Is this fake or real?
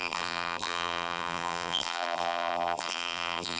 fake